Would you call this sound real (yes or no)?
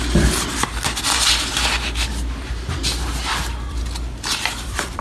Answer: yes